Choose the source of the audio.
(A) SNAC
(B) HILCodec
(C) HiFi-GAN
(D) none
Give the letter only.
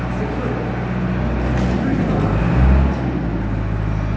D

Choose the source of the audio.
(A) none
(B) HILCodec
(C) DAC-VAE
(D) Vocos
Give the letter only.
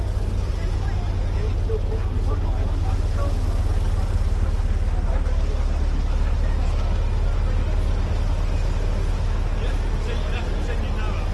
A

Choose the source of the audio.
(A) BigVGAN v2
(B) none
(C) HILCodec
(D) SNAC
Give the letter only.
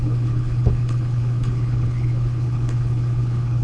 C